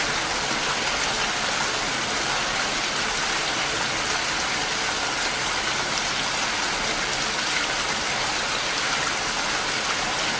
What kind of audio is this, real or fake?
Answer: real